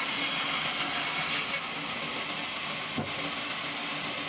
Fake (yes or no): no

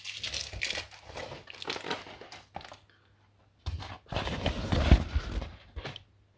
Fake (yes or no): no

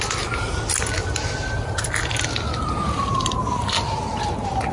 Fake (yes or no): no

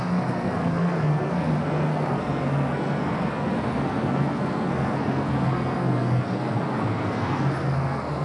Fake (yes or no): yes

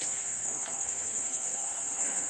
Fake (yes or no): yes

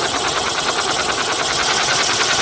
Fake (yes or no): no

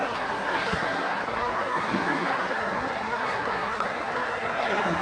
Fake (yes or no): yes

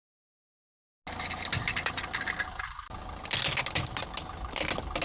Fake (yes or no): no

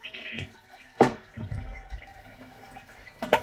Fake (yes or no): yes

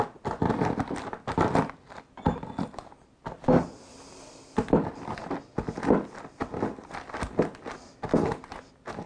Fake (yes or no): no